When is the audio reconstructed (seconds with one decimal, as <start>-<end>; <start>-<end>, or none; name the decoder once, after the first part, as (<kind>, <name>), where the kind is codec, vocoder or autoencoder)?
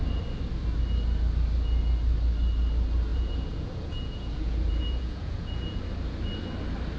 3.1-5.8 (vocoder, Vocos)